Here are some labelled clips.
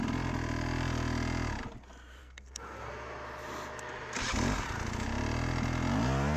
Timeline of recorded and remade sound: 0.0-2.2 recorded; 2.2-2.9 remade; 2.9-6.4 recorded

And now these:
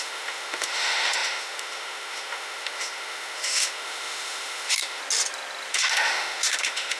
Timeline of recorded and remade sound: 0.0-5.0 remade; 5.0-5.7 recorded; 5.7-7.0 remade

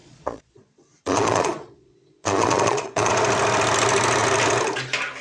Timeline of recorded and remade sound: 0.0-3.1 remade; 3.1-5.2 recorded

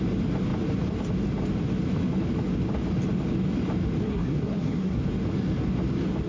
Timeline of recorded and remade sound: 0.0-4.0 recorded; 4.0-5.0 remade; 5.0-6.3 recorded

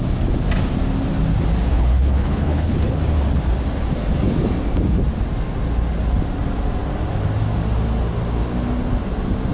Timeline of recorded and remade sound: 0.0-1.7 recorded; 1.7-3.0 remade; 3.0-9.5 recorded

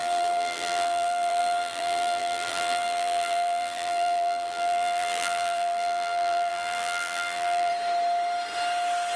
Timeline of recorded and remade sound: 0.0-7.7 remade; 7.7-9.2 recorded